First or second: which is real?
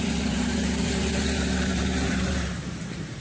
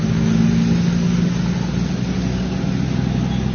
second